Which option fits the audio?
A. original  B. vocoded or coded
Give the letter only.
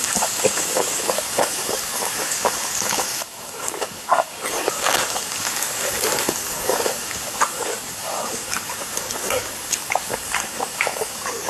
B